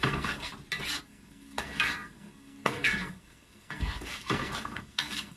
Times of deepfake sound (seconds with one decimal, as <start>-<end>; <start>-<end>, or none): 0.0-0.5; 1.0-5.4